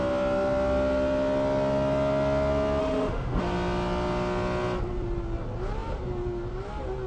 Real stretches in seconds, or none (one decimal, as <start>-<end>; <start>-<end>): 0.0-2.8; 3.4-7.1